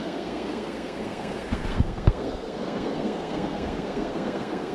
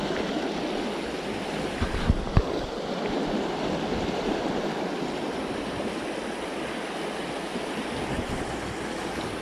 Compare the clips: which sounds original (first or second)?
second